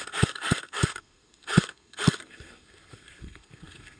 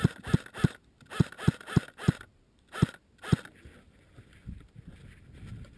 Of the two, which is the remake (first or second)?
first